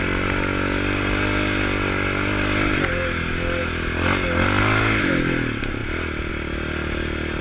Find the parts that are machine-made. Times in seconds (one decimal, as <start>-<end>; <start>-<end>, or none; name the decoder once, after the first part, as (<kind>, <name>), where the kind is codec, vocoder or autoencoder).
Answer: none